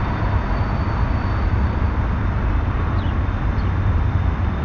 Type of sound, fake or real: real